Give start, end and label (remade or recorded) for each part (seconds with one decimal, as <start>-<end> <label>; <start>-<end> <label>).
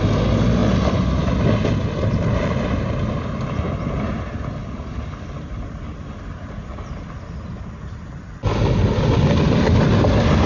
0.0-0.6 recorded; 0.6-1.7 remade; 1.7-4.6 recorded; 4.6-6.0 remade; 6.0-10.5 recorded